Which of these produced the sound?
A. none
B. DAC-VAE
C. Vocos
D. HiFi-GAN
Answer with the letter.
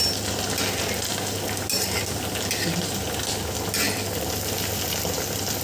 A